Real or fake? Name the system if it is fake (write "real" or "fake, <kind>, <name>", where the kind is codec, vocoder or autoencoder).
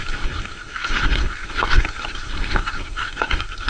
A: fake, codec, SNAC